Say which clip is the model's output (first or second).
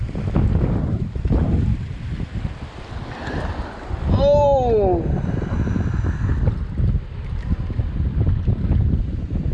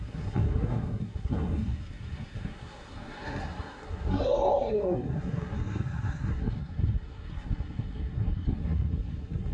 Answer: second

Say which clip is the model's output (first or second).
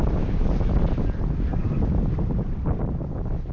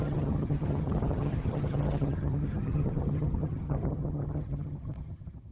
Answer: second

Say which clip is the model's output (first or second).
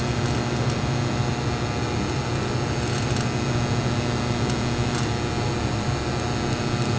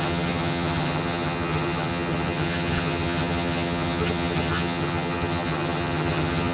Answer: second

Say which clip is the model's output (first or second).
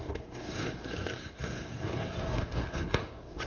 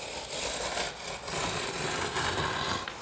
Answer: first